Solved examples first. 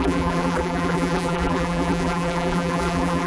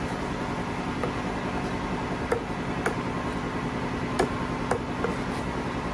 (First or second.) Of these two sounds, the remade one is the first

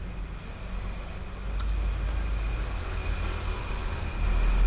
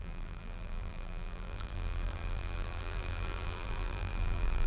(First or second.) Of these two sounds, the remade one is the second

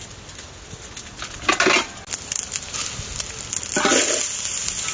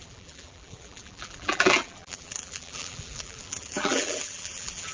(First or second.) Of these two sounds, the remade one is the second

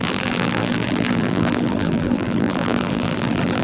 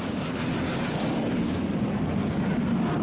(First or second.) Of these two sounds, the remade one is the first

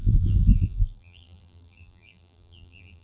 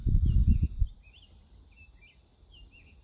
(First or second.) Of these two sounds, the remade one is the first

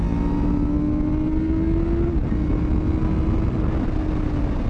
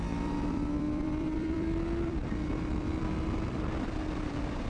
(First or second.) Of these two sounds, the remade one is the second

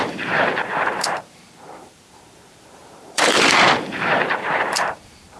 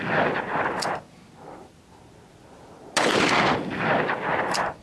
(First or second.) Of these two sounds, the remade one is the first